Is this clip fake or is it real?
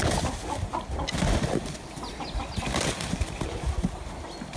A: real